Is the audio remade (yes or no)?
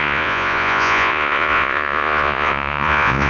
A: yes